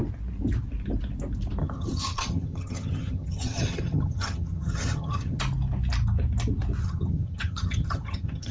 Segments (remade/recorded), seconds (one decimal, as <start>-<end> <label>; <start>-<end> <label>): 0.0-1.6 recorded; 1.6-5.4 remade; 5.4-6.8 recorded; 6.8-8.5 remade

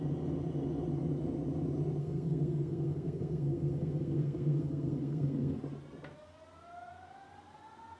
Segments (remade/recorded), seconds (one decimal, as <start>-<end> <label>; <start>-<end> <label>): 0.0-2.0 recorded; 2.0-5.6 remade; 5.6-8.0 recorded